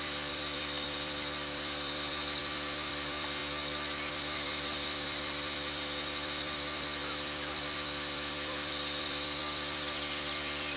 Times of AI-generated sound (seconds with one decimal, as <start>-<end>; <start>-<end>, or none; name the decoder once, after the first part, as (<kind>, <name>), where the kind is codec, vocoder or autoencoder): 0.0-3.4 (vocoder, BigVGAN v2); 4.1-10.8